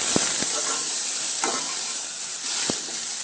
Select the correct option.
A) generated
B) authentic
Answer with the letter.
B